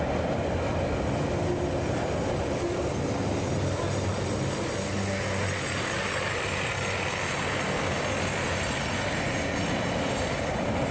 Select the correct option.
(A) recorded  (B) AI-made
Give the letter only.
A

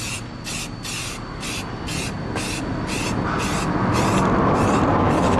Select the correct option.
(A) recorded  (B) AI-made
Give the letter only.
A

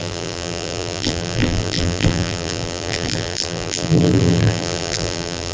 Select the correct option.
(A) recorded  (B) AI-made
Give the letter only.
B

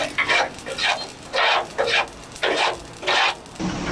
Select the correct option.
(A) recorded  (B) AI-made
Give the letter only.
A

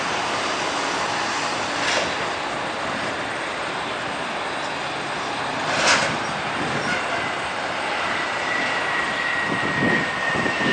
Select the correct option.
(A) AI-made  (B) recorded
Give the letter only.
B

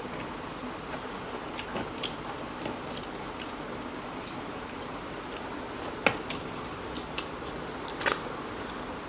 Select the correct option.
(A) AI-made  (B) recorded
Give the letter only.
B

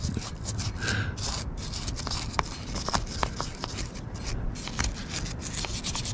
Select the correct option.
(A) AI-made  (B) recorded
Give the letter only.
B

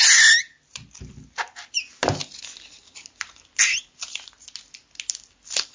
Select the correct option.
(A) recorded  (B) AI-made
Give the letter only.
A